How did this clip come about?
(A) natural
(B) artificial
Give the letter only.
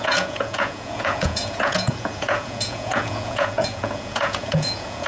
B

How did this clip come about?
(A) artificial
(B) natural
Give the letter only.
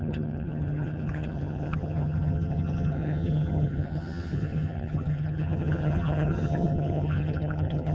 A